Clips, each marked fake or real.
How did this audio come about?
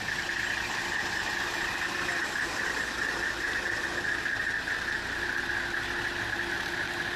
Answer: real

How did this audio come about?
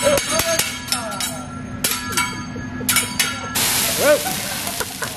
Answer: real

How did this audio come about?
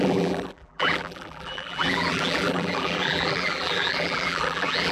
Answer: fake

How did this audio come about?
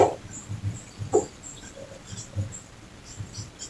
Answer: fake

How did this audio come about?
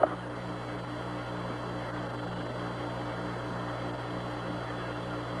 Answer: real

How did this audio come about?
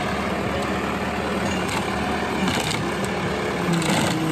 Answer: real